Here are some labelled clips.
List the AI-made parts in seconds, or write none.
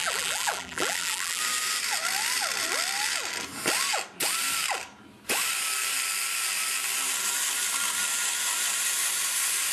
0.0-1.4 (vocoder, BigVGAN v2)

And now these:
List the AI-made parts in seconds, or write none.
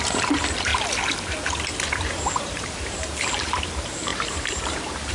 0.0-0.7 (vocoder, BigVGAN v2); 1.8-5.1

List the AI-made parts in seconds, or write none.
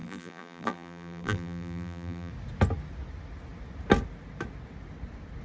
0.0-2.3 (vocoder, BigVGAN v2)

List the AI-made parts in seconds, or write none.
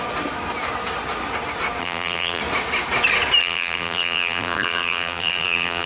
1.8-2.4 (vocoder, BigVGAN v2); 3.4-5.9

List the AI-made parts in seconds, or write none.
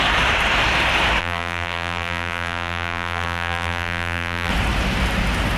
1.2-4.5 (vocoder, BigVGAN v2)